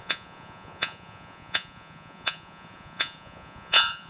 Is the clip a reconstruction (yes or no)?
yes